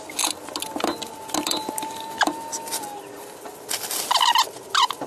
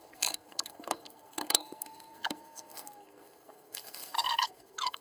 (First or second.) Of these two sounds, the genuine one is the first